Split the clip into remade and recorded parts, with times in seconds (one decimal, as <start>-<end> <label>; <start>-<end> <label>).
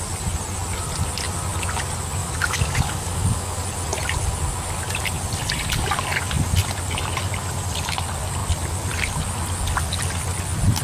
0.0-2.2 recorded; 2.2-3.6 remade; 3.6-10.8 recorded